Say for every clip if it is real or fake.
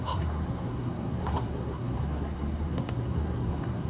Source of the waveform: fake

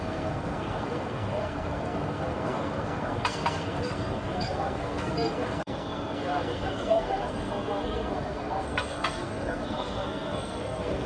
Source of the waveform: fake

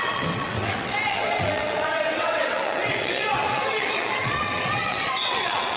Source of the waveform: fake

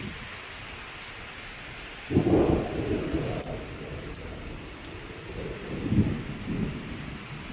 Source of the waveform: real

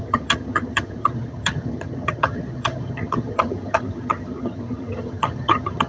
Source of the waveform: fake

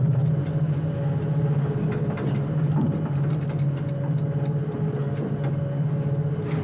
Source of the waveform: real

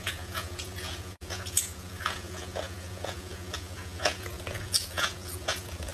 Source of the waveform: fake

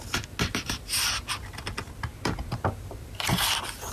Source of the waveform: real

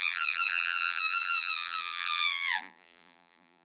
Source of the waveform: fake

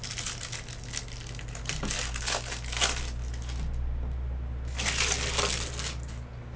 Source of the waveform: real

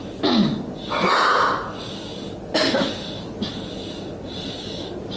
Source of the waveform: real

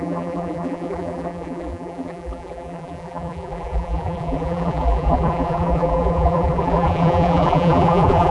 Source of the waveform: fake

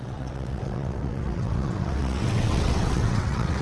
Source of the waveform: fake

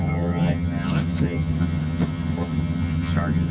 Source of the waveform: fake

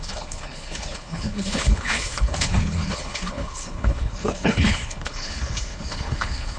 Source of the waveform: fake